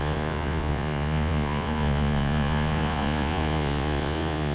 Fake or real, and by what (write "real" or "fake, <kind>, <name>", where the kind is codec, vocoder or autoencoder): fake, vocoder, Vocos